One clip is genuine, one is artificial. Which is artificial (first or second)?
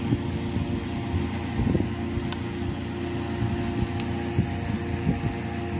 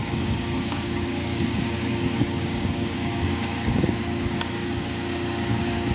second